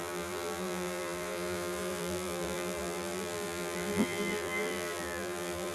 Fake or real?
fake